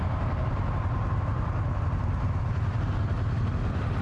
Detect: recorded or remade recorded